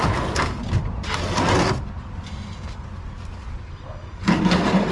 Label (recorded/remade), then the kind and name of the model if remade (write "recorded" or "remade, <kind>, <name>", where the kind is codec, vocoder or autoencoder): recorded